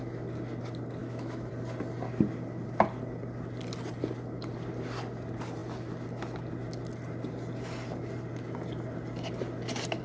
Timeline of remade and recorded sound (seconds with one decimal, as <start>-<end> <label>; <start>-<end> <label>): 0.0-1.0 recorded; 1.0-1.5 remade; 1.5-10.0 recorded